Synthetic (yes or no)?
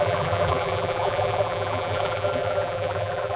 yes